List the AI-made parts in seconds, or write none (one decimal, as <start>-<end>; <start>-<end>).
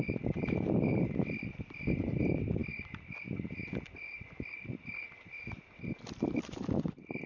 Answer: none